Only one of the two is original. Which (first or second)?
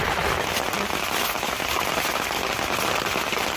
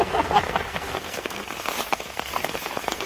first